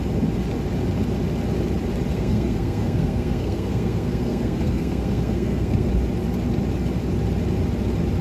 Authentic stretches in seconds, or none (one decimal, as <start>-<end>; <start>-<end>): 0.0-2.1; 5.9-8.2